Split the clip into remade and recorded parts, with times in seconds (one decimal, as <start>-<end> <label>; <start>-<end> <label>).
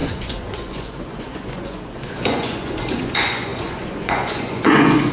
0.0-5.1 remade